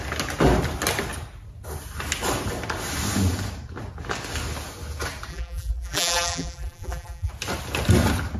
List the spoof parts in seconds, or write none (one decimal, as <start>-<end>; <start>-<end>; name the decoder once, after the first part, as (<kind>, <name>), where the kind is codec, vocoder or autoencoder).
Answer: 5.3-7.3 (vocoder, BigVGAN v2)